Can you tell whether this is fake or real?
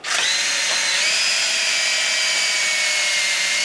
real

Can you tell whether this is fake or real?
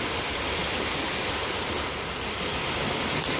real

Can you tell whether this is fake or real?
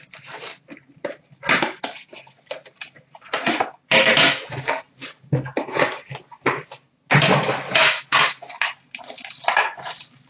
real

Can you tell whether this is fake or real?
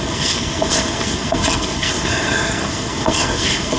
fake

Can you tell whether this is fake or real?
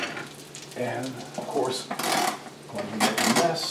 real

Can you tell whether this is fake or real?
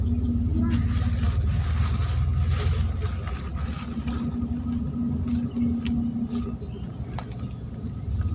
real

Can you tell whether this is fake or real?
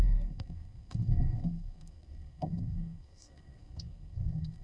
fake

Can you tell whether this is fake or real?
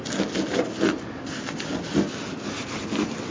real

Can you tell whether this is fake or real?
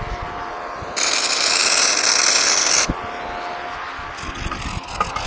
real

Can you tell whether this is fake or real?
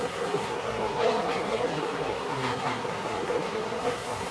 fake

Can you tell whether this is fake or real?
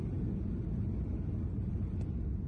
real